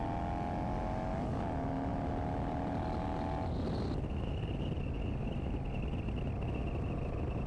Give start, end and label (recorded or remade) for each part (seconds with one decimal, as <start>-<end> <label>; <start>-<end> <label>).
0.0-7.5 recorded